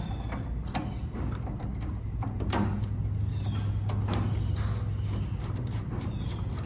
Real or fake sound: real